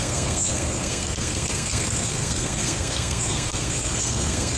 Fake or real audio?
fake